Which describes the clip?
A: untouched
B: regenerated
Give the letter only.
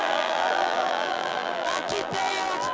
B